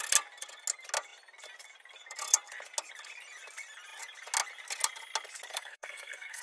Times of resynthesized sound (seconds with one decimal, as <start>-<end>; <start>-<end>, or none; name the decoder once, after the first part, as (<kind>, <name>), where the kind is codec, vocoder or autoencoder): 5.5-6.4 (codec, SNAC)